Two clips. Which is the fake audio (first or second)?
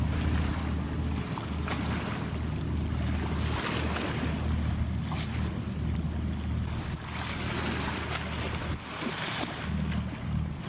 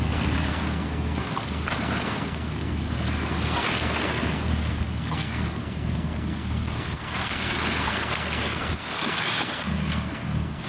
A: second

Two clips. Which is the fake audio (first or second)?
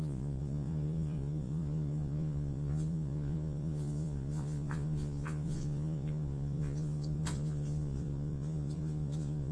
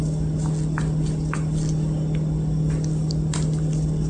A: first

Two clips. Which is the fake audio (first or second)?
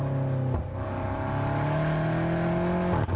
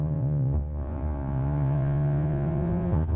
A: second